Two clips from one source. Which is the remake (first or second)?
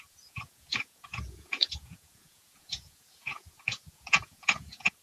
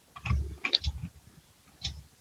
first